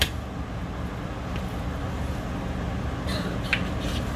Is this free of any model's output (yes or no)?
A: yes